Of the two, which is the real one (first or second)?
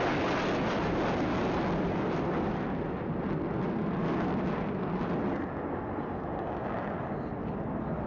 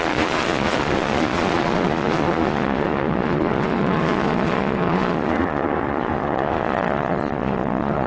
first